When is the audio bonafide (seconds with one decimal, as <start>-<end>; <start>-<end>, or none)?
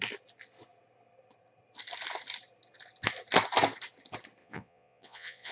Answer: 0.0-4.4